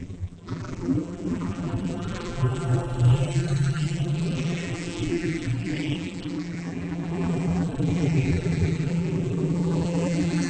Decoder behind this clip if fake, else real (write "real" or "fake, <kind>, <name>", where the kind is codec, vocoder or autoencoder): fake, vocoder, BigVGAN v2